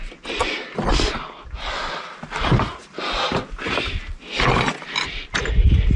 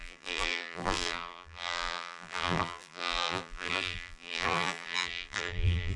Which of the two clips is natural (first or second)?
first